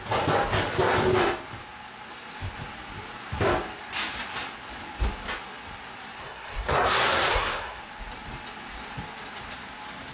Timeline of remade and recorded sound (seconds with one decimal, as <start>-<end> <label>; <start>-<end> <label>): 0.0-6.2 recorded; 6.2-7.8 remade; 7.8-10.1 recorded